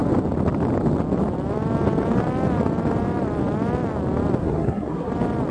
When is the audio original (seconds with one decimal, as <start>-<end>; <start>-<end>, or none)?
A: 0.0-4.4; 5.1-5.5